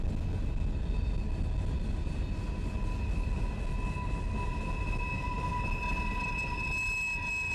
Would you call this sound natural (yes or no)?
yes